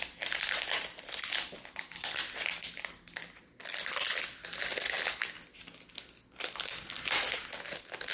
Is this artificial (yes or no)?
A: no